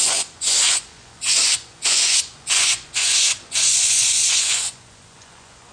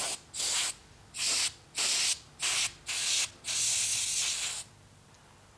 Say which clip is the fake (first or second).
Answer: first